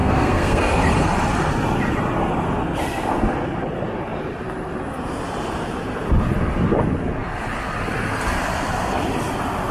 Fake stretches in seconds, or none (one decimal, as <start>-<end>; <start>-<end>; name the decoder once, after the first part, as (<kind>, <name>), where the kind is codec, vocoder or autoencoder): 0.0-0.6 (codec, SNAC)